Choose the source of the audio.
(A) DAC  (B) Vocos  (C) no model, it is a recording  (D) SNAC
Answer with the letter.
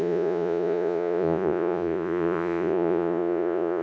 B